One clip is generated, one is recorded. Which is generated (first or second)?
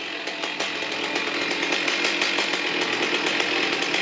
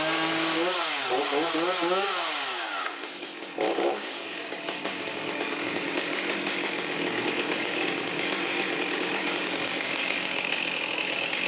second